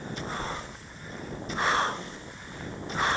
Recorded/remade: recorded